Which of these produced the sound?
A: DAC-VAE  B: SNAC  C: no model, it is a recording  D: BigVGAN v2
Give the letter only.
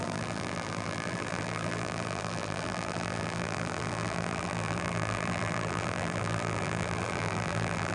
D